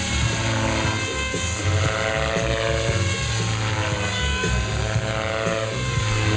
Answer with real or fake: real